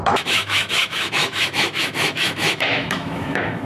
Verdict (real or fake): fake